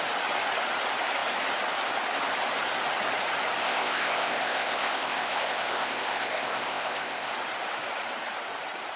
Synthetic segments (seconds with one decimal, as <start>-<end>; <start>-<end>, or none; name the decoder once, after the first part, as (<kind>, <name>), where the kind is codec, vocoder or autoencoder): 3.6-7.3 (codec, ZipCodec)